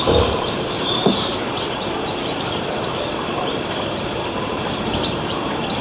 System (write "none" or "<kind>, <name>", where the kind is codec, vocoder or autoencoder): vocoder, BigVGAN v2